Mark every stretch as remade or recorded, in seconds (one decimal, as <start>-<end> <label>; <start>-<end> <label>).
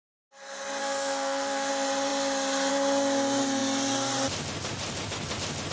0.0-0.8 recorded; 0.8-1.7 remade; 1.7-5.7 recorded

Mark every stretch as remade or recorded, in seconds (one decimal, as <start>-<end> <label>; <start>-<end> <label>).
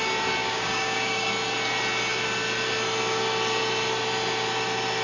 0.0-0.4 recorded; 0.4-1.3 remade; 1.3-5.0 recorded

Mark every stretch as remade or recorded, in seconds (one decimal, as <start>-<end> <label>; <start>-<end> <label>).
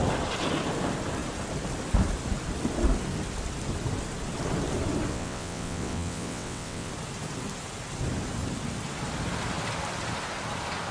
0.0-5.1 recorded; 5.1-6.9 remade; 6.9-10.9 recorded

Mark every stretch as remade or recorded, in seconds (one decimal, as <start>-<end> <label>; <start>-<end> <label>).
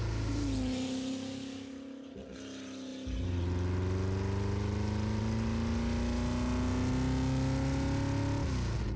0.0-9.0 recorded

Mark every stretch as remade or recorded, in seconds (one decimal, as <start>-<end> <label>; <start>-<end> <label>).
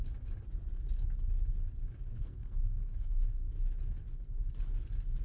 0.0-2.1 recorded; 2.1-3.5 remade; 3.5-5.2 recorded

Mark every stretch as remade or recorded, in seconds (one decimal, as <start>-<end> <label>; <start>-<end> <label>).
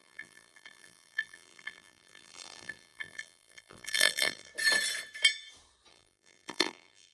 0.0-4.5 remade; 4.5-5.9 recorded; 5.9-7.1 remade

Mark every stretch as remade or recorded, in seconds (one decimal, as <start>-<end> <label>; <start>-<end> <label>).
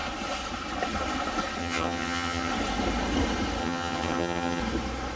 0.0-1.6 recorded; 1.6-2.5 remade; 2.5-3.6 recorded; 3.6-4.6 remade; 4.6-5.2 recorded